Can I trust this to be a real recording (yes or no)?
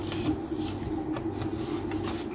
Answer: yes